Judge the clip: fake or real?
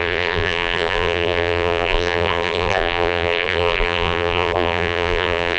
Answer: fake